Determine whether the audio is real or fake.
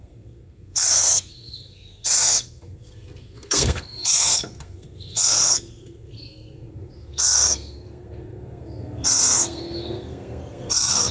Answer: fake